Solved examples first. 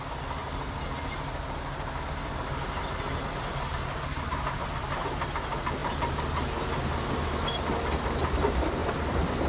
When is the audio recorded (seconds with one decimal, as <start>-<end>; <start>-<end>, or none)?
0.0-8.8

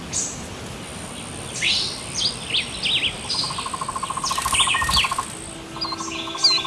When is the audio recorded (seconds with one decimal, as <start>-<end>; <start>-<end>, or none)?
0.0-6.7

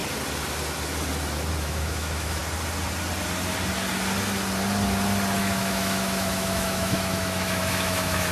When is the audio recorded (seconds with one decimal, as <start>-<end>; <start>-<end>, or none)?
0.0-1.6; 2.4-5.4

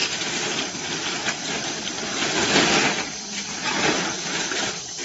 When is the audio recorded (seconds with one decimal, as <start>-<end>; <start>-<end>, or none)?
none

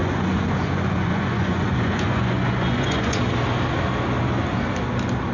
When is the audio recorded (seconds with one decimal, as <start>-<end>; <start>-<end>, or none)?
3.2-5.3

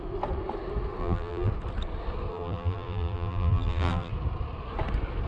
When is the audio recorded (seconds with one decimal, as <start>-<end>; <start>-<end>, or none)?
0.0-1.0; 1.5-2.3; 4.1-5.3